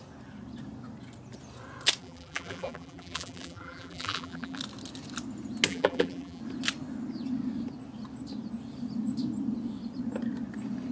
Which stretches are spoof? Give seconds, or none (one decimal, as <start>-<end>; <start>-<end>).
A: 2.0-4.6; 5.7-6.4